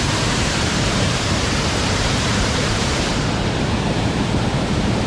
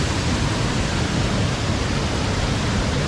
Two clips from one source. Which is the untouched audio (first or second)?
second